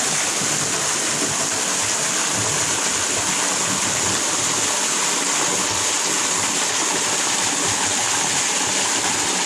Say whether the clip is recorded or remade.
recorded